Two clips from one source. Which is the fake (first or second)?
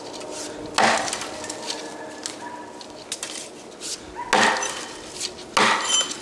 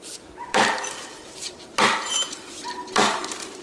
second